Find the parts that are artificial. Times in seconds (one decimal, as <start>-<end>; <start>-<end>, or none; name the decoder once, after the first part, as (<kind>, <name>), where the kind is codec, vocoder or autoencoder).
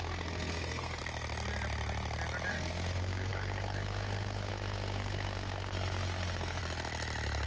0.0-1.0 (codec, SNAC); 2.5-6.6